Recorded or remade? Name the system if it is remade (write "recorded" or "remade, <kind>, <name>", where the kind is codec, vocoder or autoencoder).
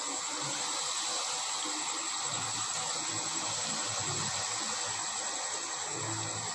recorded